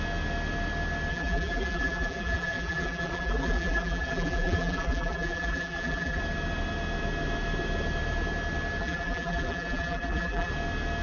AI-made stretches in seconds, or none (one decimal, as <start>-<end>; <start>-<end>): 1.1-6.2; 8.8-10.5